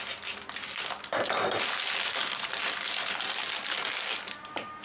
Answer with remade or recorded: recorded